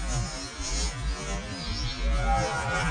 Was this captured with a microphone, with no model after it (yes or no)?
yes